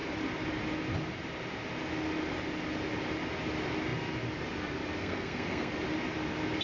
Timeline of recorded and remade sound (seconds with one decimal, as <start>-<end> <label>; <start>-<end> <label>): 0.0-5.0 recorded; 5.0-5.7 remade; 5.7-6.6 recorded